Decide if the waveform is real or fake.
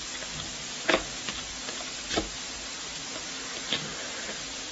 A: real